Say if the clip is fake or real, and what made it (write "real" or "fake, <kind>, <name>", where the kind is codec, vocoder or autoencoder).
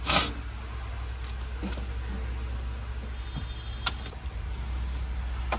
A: real